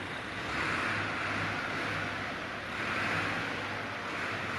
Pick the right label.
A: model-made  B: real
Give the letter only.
B